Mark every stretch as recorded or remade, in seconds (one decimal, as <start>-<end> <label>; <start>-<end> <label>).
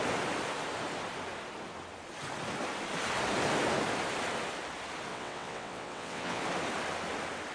0.0-5.1 recorded; 5.1-6.4 remade; 6.4-7.5 recorded